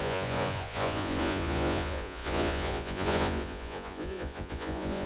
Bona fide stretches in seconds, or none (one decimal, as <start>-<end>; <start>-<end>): none